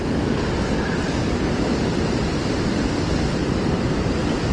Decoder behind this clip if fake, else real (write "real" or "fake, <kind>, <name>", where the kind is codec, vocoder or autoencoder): real